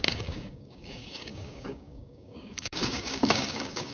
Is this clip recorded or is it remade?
remade